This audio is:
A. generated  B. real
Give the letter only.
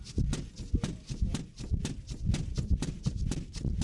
B